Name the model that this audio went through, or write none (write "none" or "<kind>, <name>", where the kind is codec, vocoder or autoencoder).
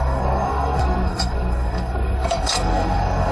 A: codec, SNAC